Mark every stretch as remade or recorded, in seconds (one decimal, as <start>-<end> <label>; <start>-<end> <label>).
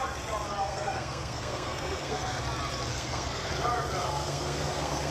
0.0-0.6 recorded; 0.6-2.4 remade; 2.4-2.9 recorded; 2.9-3.5 remade; 3.5-4.0 recorded; 4.0-5.1 remade